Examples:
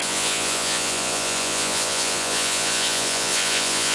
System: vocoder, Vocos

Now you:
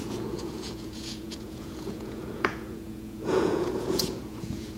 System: vocoder, Vocos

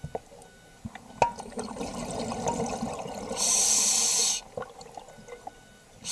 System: none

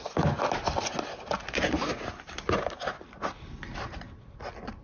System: none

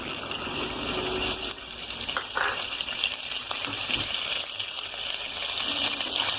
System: none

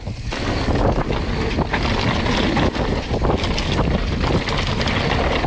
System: none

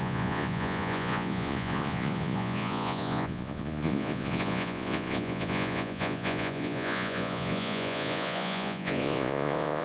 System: vocoder, Vocos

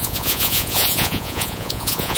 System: vocoder, Vocos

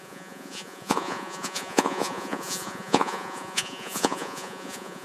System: vocoder, Vocos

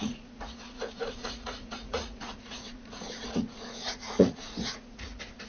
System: vocoder, Vocos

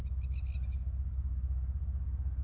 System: none